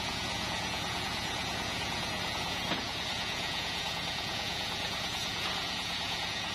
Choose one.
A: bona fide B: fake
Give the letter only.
B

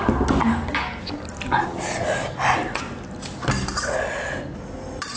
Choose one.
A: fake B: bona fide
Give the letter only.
B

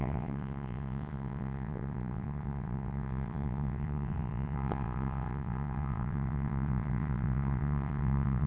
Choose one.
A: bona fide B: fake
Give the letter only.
B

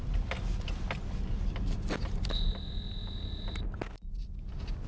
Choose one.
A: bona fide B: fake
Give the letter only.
A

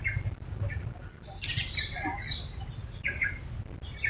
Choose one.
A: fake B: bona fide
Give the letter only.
B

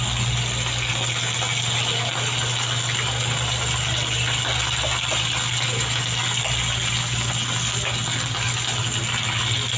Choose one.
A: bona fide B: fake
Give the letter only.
A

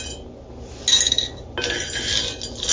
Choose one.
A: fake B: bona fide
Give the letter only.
B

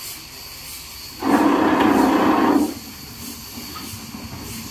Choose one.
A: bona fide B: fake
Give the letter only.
A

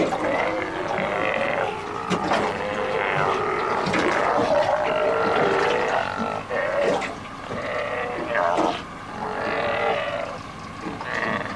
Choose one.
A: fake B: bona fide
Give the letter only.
B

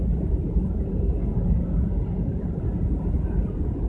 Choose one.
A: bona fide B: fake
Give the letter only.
B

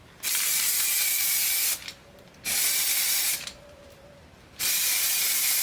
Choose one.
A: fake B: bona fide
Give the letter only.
A